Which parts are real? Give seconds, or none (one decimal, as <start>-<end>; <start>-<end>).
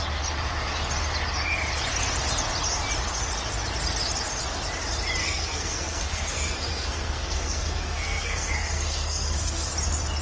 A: 0.0-5.2; 9.7-10.2